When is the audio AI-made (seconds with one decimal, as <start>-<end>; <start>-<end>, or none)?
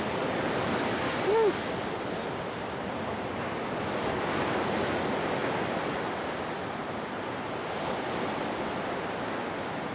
none